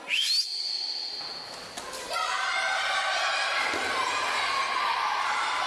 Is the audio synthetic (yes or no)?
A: no